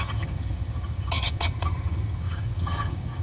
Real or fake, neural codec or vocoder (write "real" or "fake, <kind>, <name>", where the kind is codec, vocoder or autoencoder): fake, vocoder, HiFi-GAN